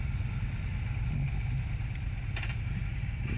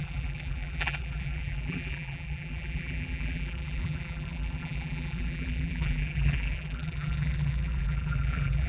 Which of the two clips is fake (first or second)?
second